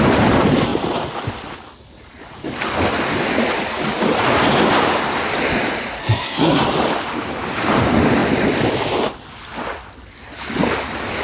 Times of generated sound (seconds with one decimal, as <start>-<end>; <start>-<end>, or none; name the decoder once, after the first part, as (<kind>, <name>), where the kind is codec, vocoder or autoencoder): 6.0-6.6 (codec, SNAC)